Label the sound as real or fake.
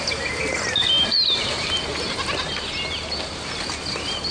real